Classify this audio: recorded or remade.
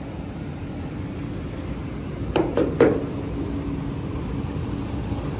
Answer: recorded